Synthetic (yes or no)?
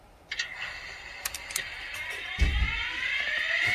no